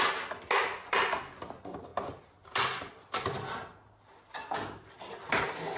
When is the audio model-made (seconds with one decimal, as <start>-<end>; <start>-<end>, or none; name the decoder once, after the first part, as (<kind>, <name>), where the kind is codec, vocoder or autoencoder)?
1.9-5.3 (vocoder, BigVGAN v2)

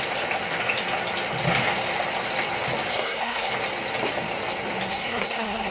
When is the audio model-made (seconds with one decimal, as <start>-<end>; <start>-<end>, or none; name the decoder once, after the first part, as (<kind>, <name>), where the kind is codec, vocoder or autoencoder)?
2.9-3.5 (codec, SNAC); 4.9-5.7

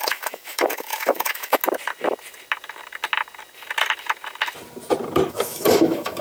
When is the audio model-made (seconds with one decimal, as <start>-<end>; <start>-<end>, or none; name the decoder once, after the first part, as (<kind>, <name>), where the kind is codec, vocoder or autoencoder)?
0.0-1.6 (autoencoder, DAC-VAE); 5.3-6.2

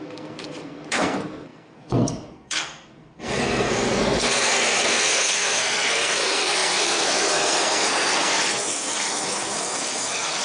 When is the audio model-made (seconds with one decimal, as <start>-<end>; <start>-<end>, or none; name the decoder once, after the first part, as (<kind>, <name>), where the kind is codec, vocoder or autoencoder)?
0.0-10.4 (codec, SNAC)

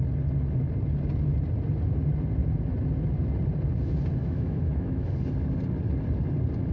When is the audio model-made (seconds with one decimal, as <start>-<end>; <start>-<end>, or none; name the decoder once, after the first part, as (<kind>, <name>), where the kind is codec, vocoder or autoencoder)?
4.2-5.1 (autoencoder, DAC-VAE)

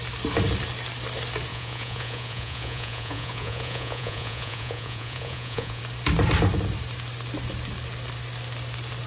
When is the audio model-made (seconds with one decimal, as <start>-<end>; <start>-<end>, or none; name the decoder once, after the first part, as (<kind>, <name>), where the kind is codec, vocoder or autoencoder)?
1.5-5.8 (vocoder, Vocos)

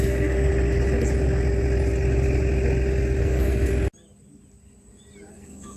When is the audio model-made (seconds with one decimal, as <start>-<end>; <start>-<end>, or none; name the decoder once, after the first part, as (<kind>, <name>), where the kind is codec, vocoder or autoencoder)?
0.0-0.5 (codec, SNAC); 3.2-3.7; 5.3-5.8

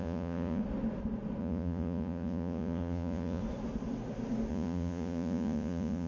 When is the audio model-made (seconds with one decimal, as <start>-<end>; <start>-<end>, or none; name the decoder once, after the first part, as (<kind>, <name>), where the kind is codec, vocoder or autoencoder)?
0.0-0.6 (vocoder, Vocos); 1.4-3.4; 4.5-6.1